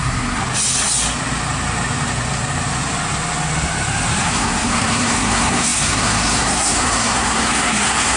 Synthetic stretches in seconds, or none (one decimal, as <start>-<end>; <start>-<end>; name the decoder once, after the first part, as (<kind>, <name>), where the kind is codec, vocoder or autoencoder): 0.0-0.4 (codec, SNAC); 4.2-8.2